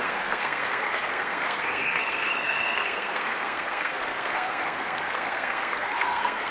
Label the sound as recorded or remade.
remade